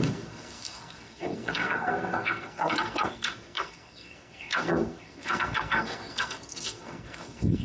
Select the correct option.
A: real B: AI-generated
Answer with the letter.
B